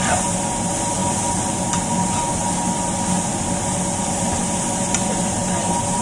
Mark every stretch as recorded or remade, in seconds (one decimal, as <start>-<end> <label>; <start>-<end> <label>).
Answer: 0.0-6.0 recorded